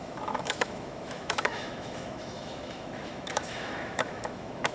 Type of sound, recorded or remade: remade